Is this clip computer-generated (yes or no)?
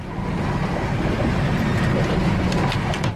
no